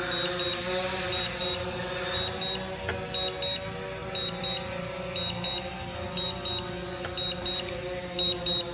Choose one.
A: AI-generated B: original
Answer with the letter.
B